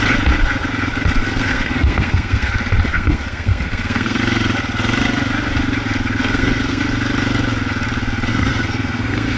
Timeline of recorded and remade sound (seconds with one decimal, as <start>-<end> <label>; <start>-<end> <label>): 0.0-1.2 recorded; 1.2-2.5 remade; 2.5-2.9 recorded; 2.9-4.2 remade; 4.2-6.2 recorded; 6.2-6.8 remade; 6.8-8.3 recorded; 8.3-9.4 remade